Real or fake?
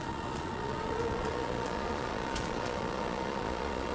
fake